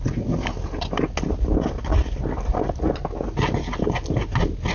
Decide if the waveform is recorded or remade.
recorded